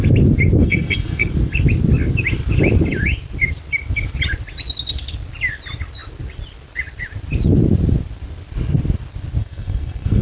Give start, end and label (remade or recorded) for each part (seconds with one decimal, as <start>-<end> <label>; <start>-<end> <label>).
0.0-0.6 recorded; 0.6-1.3 remade; 1.3-9.4 recorded; 9.4-10.2 remade